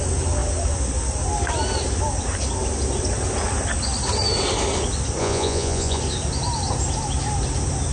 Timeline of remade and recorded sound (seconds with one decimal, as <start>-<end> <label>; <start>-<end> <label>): 0.0-5.2 recorded; 5.2-6.0 remade; 6.0-7.9 recorded